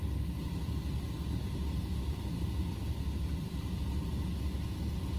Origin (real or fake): real